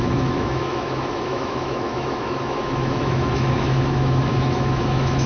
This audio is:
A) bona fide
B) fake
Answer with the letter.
B